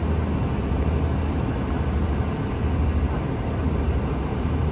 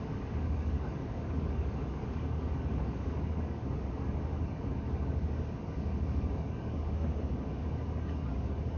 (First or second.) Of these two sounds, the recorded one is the first